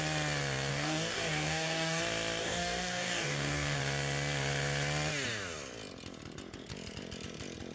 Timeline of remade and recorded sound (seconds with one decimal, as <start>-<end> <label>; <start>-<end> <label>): 0.0-0.7 recorded; 0.7-2.0 remade; 2.0-2.4 recorded; 2.4-3.8 remade; 3.8-7.7 recorded